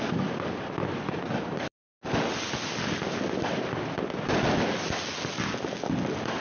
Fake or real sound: real